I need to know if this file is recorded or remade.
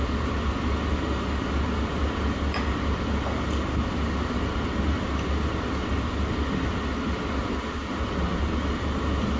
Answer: recorded